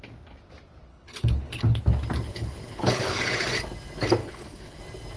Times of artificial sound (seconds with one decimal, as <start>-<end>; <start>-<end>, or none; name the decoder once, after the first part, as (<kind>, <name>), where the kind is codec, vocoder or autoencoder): 0.9-1.8 (codec, HILCodec); 2.3-3.2; 4.2-4.8